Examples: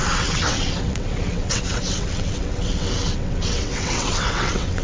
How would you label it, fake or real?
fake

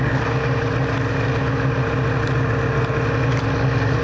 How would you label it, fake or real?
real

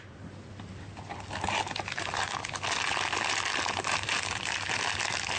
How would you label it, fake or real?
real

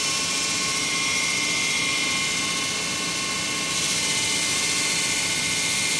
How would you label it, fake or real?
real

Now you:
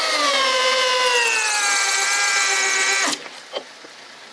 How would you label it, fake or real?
real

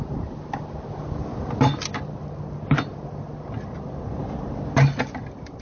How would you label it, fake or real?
real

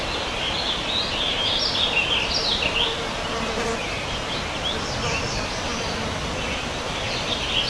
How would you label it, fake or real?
real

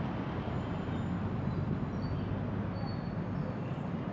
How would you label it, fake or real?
real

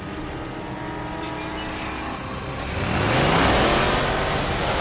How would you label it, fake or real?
real